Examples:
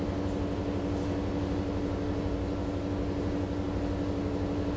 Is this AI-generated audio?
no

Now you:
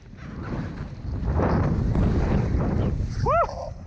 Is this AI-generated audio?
no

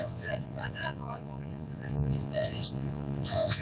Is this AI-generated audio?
yes